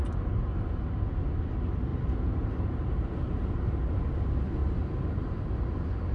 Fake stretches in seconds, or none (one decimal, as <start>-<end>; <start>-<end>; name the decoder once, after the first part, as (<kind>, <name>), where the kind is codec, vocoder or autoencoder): 1.9-2.9 (vocoder, BigVGAN v2); 4.6-5.4